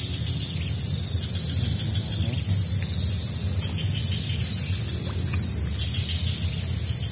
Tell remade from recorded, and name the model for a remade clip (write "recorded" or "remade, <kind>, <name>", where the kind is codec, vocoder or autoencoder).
recorded